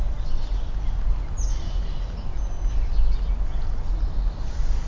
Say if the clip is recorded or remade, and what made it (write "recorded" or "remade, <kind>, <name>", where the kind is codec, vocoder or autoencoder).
recorded